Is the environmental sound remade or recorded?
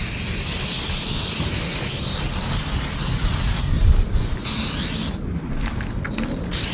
recorded